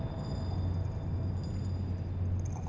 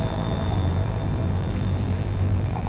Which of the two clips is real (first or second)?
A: first